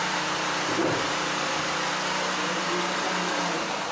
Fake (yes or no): yes